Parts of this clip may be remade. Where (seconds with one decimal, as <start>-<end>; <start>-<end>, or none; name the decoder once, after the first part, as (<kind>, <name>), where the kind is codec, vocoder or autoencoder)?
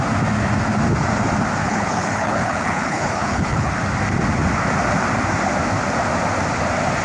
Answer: 1.6-3.7 (codec, HILCodec)